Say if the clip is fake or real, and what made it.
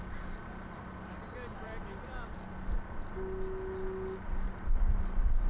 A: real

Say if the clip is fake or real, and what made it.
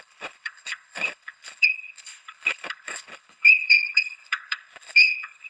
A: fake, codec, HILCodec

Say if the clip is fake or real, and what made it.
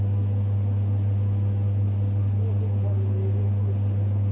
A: real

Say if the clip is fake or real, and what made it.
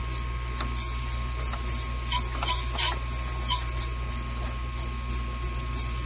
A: real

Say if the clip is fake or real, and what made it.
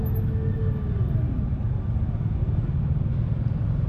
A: real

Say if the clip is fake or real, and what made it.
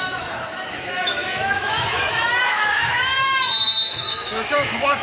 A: fake, autoencoder, DAC-VAE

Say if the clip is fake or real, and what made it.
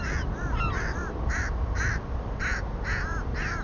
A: real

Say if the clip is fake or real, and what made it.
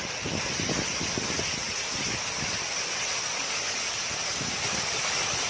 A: real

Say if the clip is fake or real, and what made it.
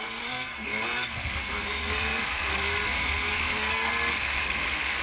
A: fake, codec, SNAC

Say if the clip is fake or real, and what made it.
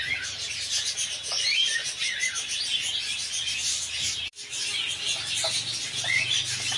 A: real